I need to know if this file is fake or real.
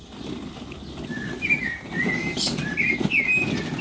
real